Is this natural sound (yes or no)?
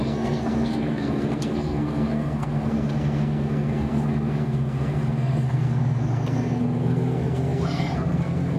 no